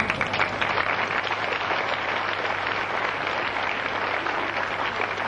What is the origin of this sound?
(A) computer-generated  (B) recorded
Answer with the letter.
B